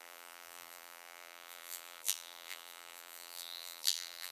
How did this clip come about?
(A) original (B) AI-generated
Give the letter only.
B